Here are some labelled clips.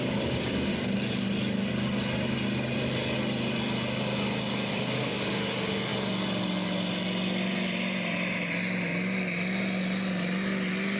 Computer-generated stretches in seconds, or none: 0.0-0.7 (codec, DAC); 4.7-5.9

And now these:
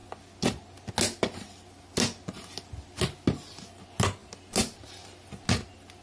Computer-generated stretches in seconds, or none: none

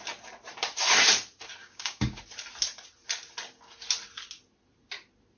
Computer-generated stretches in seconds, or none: 1.6-2.2 (codec, DAC)

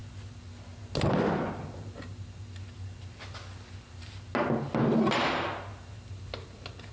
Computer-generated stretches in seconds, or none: none

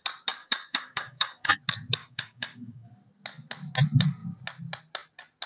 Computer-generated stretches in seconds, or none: 0.4-1.5 (codec, DAC); 2.0-2.9